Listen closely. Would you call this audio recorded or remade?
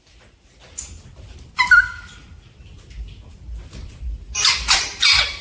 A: recorded